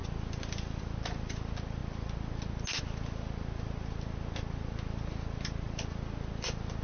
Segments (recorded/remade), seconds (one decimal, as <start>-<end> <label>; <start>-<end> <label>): 0.0-6.8 recorded